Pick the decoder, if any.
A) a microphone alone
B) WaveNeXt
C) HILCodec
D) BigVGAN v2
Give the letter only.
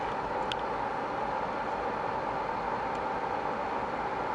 A